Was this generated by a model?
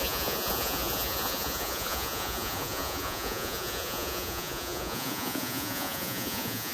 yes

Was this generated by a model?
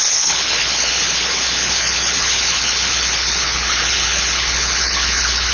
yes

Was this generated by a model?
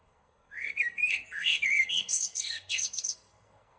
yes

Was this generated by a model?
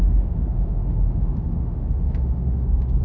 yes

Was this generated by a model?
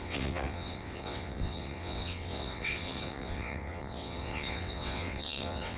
yes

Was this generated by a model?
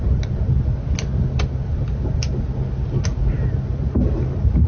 no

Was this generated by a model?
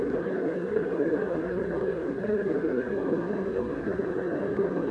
yes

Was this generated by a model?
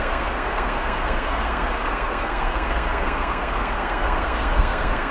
yes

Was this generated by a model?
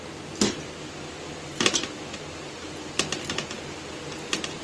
no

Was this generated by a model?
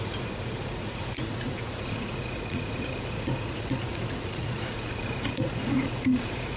yes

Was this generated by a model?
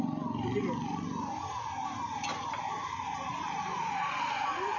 no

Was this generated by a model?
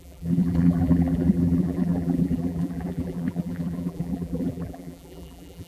yes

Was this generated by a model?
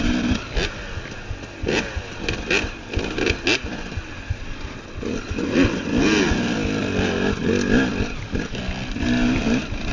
no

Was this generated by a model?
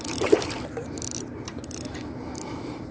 no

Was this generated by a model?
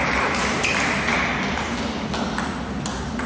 no